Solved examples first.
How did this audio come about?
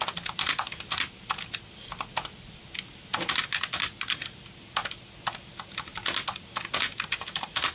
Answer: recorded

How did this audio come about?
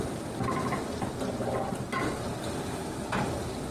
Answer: recorded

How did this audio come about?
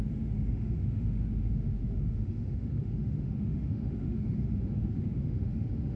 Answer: remade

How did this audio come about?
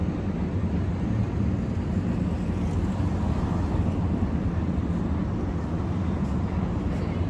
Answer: recorded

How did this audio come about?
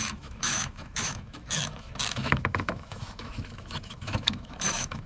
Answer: remade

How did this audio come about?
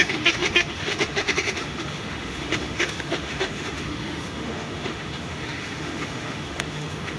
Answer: remade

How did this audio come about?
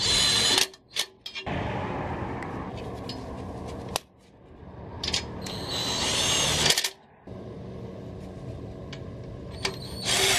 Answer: recorded